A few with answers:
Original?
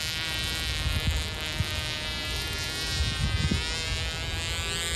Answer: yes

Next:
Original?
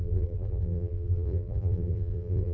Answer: no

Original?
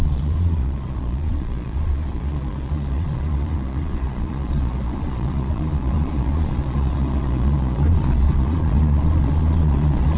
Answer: no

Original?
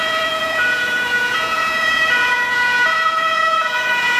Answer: no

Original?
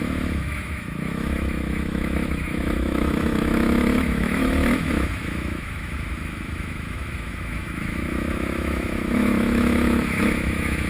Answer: no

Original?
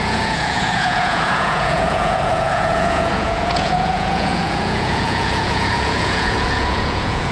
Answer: no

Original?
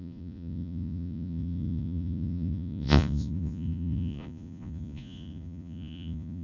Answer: no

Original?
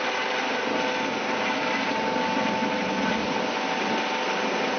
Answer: yes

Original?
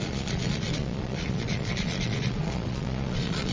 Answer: no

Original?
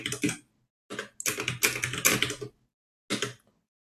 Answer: yes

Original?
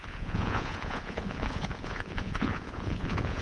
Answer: no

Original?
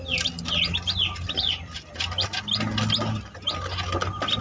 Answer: yes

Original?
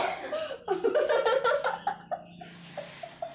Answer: yes